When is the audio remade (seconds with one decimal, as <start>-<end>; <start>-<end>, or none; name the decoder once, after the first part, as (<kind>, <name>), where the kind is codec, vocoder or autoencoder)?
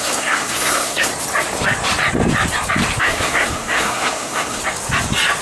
0.0-1.1 (codec, SNAC); 3.0-4.6